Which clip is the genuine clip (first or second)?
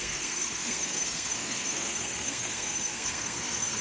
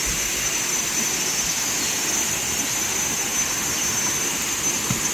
second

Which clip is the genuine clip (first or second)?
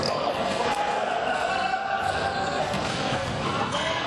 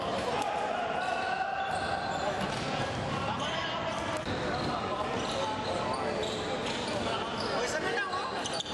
second